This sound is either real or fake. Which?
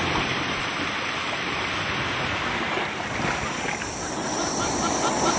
real